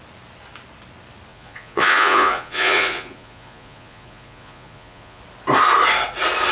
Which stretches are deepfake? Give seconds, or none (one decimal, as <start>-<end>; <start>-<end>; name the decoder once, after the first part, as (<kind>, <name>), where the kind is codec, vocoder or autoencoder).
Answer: 1.3-5.2 (vocoder, Vocos)

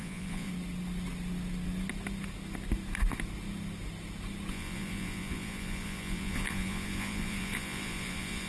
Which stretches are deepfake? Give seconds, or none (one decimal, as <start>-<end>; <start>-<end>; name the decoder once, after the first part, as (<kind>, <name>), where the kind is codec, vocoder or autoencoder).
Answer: 0.0-0.5 (vocoder, Vocos); 4.5-8.5

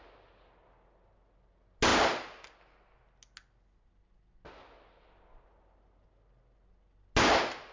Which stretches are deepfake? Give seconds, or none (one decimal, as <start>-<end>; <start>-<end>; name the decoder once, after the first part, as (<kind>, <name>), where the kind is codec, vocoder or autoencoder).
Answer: none

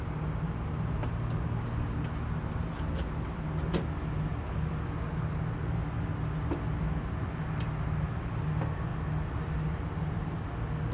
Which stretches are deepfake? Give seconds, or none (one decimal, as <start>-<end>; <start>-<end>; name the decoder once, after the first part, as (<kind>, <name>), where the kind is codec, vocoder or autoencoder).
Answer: none

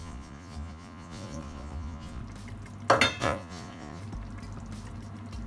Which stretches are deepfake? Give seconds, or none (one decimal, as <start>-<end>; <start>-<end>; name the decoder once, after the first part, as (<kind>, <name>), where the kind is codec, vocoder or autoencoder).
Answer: 0.0-2.2 (vocoder, Vocos); 3.2-4.0

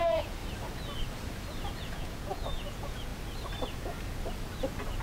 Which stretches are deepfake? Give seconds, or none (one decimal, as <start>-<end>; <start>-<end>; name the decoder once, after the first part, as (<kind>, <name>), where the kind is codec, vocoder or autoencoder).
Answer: 0.0-0.4 (vocoder, Vocos); 1.8-3.1

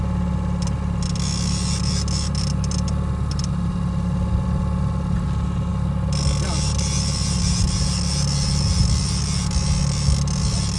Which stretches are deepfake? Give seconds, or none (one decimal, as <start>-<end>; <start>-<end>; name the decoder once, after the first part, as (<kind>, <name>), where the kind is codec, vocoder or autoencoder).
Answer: none